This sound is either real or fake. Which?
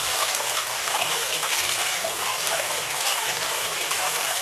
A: fake